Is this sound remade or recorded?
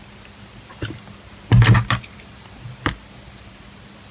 remade